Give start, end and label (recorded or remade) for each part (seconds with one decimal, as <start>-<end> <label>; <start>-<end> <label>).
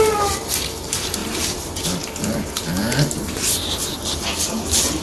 0.0-5.0 recorded